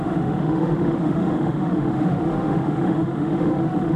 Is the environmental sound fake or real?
fake